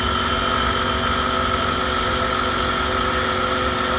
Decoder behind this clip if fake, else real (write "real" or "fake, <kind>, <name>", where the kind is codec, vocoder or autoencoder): real